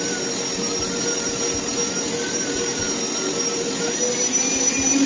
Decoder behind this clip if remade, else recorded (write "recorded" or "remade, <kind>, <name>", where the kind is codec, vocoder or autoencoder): recorded